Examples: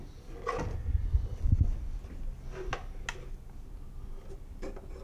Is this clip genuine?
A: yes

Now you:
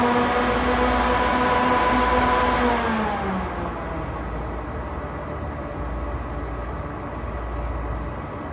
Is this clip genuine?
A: yes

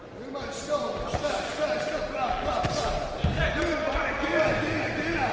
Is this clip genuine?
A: yes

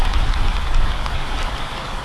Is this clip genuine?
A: no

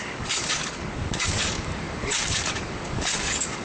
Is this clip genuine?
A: no